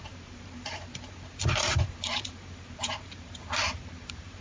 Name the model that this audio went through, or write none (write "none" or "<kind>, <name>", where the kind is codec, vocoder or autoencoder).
vocoder, BigVGAN v2